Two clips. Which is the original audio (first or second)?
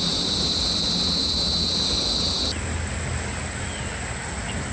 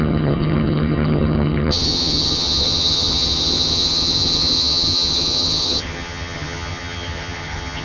first